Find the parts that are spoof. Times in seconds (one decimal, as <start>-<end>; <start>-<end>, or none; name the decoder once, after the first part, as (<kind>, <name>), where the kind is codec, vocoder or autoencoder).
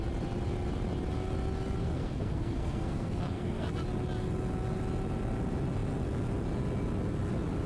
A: 1.8-3.8 (codec, SNAC)